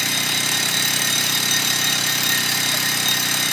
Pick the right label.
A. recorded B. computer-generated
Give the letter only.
B